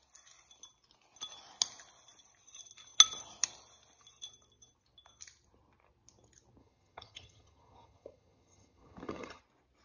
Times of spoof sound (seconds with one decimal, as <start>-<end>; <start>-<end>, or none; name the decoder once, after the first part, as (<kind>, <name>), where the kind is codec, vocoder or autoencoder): 6.6-9.4 (vocoder, HiFi-GAN)